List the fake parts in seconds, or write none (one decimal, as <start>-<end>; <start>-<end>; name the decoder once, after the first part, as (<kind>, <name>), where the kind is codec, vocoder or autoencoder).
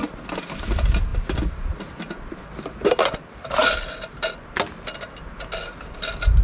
none